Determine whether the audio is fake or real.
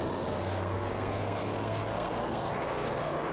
fake